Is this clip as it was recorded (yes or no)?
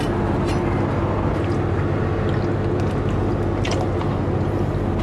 yes